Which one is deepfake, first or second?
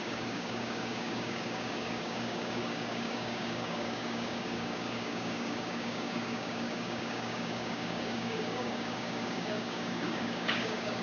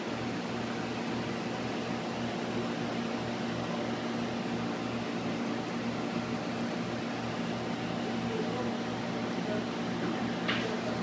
first